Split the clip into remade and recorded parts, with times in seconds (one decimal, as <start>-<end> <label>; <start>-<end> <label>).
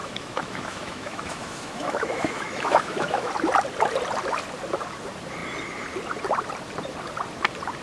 0.0-3.3 remade; 3.3-7.8 recorded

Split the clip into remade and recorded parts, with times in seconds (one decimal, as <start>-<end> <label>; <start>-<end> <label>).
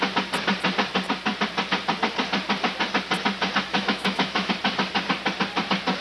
0.0-3.7 recorded; 3.7-4.5 remade; 4.5-6.0 recorded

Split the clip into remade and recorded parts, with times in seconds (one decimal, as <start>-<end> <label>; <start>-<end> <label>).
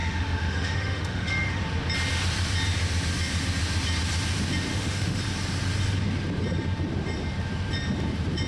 0.0-1.6 remade; 1.6-4.7 recorded; 4.7-5.2 remade; 5.2-8.5 recorded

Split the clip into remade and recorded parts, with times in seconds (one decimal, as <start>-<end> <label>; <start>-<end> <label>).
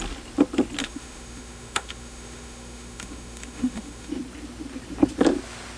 0.0-0.8 recorded; 0.8-4.1 remade; 4.1-5.8 recorded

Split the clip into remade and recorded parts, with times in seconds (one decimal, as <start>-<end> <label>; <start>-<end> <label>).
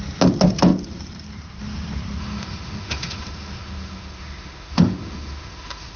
0.0-2.2 recorded; 2.2-6.0 remade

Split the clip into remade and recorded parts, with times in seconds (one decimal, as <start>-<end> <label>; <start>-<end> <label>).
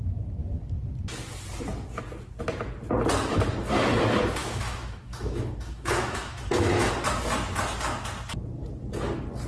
0.0-4.4 recorded; 4.4-6.9 remade; 6.9-9.5 recorded